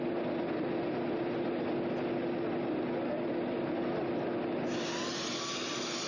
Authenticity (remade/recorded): recorded